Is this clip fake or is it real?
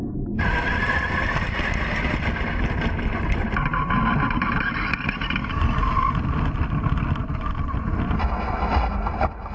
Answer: real